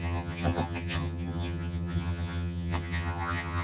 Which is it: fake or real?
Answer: fake